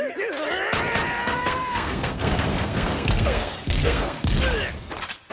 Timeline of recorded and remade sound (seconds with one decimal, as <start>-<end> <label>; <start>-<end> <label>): 0.0-1.2 recorded; 1.2-4.4 remade; 4.4-5.3 recorded